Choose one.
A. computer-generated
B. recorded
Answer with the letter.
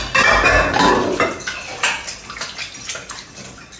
B